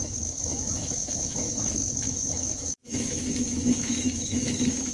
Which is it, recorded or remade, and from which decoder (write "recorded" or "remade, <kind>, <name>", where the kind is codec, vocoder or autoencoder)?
remade, autoencoder, DAC-VAE